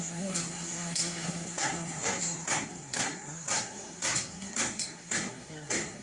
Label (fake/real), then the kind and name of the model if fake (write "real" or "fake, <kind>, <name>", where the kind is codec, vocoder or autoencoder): fake, codec, SNAC